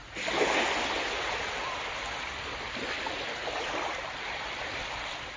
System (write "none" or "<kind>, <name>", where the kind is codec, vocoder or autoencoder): vocoder, BigVGAN v2